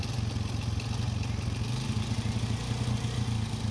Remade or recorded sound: recorded